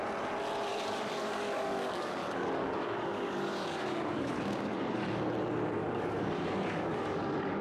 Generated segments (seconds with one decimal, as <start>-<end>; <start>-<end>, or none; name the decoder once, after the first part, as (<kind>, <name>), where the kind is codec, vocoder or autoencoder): 0.7-5.3 (codec, DAC); 5.8-7.6